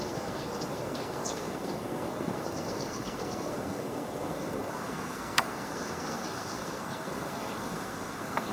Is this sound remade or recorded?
remade